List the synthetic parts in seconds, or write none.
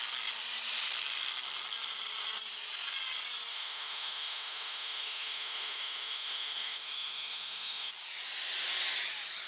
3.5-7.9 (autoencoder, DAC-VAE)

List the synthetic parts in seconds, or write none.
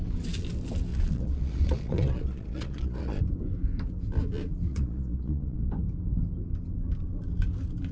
0.9-3.2 (vocoder, Vocos); 4.7-5.7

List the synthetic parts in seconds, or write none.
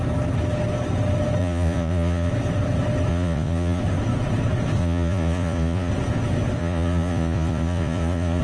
1.4-2.3 (vocoder, Vocos); 3.1-3.8; 4.8-5.9; 6.6-8.4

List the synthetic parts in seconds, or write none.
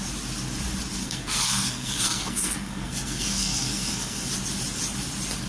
1.0-4.3 (codec, SNAC)